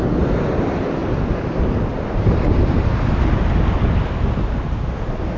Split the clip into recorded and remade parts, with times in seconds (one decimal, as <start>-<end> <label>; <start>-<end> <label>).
0.0-5.4 recorded